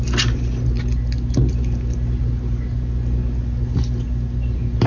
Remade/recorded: recorded